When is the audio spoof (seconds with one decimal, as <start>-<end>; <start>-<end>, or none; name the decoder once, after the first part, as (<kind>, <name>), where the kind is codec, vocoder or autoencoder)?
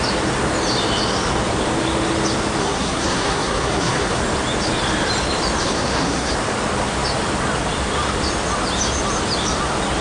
2.6-4.2 (codec, SNAC); 5.6-6.3